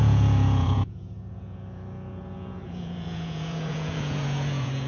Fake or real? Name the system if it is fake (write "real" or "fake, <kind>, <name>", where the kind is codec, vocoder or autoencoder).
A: fake, vocoder, Vocos